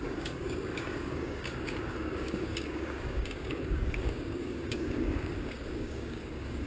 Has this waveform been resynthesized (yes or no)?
yes